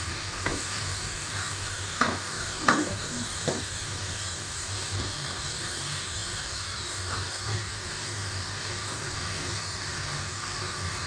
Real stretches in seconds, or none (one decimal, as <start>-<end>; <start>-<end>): none